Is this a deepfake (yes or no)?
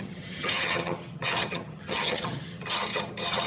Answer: yes